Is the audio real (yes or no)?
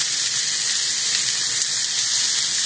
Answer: yes